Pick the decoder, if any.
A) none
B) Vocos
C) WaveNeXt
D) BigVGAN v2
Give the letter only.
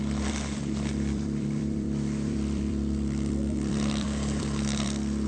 D